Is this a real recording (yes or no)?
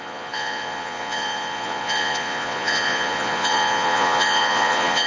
no